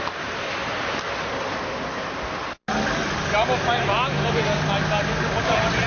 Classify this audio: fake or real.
real